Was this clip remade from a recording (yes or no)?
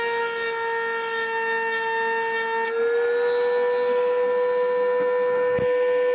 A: no